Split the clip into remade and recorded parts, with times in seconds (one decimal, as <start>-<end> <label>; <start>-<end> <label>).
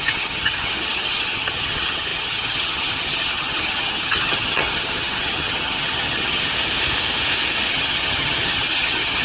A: 0.0-6.5 remade; 6.5-7.7 recorded; 7.7-9.2 remade